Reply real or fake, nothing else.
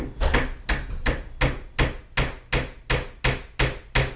real